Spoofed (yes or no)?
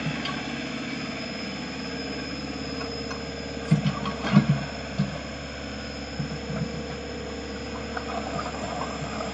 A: no